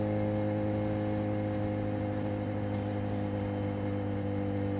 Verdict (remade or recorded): recorded